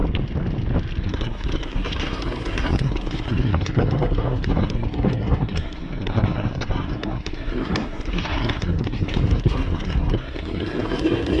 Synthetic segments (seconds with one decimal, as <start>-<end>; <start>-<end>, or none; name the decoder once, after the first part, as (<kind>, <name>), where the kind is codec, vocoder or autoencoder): 1.0-11.4 (codec, SNAC)